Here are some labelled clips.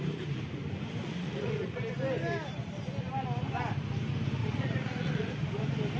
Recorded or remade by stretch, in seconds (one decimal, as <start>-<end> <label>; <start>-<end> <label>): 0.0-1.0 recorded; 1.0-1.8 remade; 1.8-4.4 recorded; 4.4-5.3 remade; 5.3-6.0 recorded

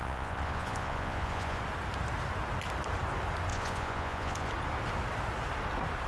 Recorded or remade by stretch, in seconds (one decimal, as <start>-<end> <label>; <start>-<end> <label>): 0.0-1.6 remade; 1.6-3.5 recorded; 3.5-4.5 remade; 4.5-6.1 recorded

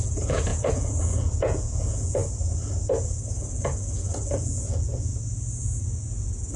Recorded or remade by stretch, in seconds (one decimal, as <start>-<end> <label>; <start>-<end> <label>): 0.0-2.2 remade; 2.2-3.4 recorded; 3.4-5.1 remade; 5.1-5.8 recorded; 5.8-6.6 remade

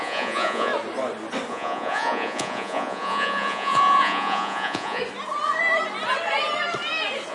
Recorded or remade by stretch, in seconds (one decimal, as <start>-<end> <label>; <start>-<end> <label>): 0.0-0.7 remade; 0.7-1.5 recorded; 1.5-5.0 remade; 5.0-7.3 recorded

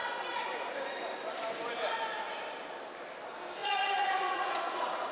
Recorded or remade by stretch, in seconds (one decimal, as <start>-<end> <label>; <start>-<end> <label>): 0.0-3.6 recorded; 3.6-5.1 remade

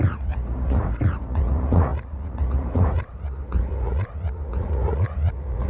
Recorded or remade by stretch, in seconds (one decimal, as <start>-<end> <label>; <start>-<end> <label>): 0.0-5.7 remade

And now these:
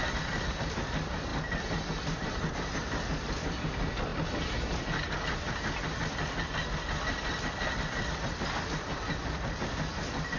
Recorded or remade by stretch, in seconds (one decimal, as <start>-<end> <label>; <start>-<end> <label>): 0.0-10.4 recorded